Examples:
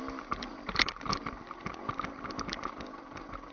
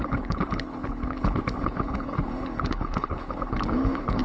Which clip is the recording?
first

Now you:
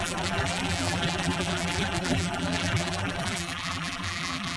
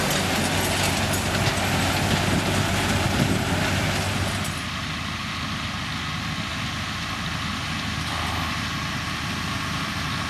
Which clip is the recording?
second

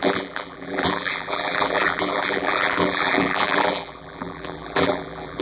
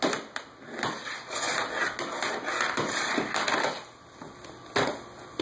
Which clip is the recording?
second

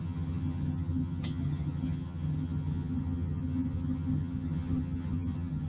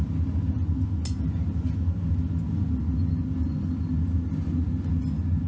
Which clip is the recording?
second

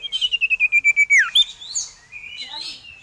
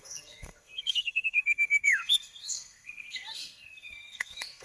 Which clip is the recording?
first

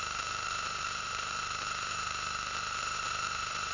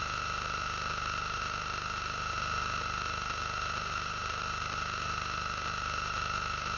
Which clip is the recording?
second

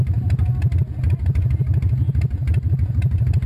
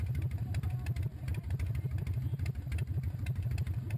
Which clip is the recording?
first